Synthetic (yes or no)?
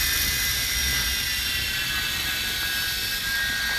no